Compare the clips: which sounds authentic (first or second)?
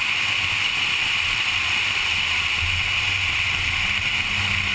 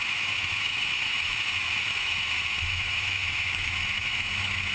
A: first